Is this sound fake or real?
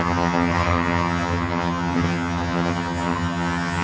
fake